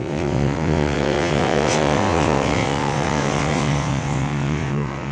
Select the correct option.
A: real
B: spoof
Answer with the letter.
B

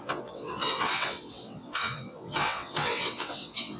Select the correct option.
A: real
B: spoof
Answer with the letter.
B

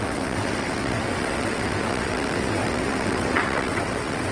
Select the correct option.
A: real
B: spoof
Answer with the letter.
B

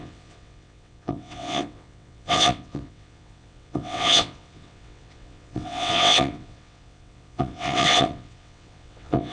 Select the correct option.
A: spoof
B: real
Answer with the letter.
A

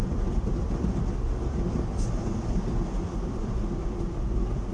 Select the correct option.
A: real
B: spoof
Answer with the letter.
A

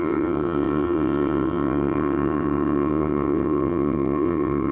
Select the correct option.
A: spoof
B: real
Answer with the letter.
A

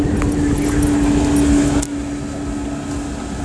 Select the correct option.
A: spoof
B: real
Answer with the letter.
B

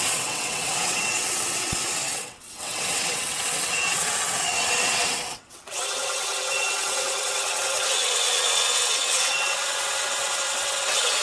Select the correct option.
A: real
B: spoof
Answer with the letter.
B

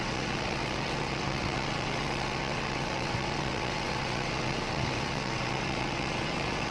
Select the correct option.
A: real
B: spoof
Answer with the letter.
B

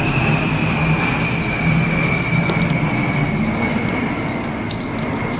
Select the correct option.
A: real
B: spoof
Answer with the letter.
A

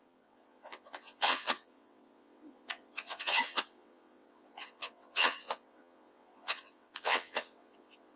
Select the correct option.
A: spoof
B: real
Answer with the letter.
A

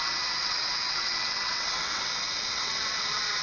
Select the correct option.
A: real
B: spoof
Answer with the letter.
B